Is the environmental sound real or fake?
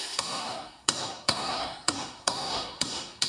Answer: fake